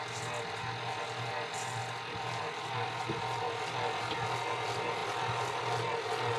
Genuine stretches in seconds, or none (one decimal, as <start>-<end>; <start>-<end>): 0.0-6.4